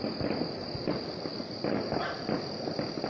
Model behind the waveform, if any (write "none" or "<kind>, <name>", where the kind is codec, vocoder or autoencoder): none